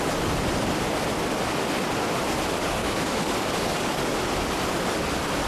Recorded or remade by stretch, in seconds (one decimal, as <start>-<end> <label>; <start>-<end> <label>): 0.0-2.8 recorded; 2.8-4.1 remade; 4.1-5.5 recorded